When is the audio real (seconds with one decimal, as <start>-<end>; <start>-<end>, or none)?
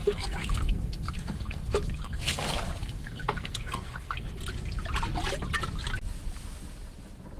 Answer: 4.3-7.4